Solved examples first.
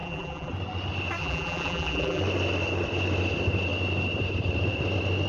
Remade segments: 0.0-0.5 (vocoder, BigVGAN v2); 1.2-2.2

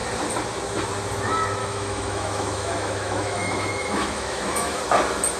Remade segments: 1.6-4.8 (autoencoder, DAC-VAE)